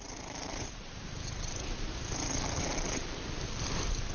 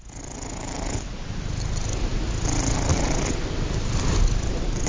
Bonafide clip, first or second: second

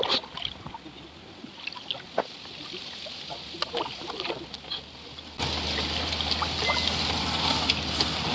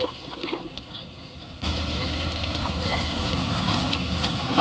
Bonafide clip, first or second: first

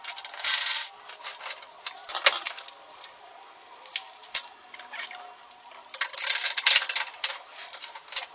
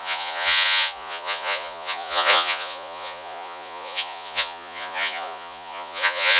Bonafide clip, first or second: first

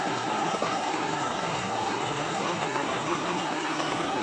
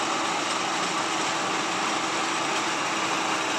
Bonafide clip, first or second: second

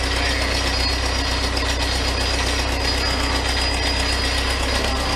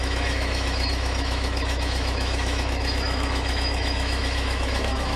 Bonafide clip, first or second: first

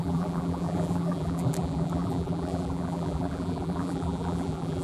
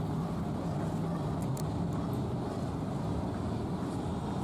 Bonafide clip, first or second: second